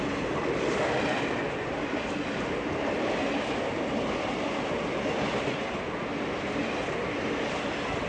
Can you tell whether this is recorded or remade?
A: recorded